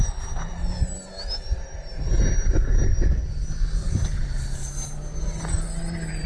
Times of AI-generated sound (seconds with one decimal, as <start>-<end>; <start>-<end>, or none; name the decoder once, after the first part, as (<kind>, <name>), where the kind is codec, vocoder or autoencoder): none